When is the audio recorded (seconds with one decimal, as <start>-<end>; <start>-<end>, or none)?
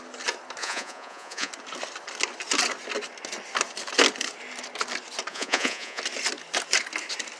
0.0-0.6; 1.5-5.3; 6.0-7.4